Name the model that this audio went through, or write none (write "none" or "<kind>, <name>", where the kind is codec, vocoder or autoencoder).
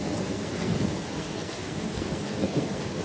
codec, SNAC